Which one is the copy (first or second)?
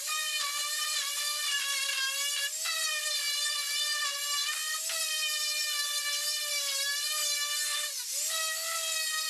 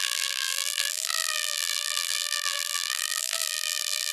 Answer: second